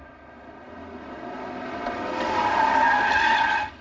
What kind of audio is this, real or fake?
real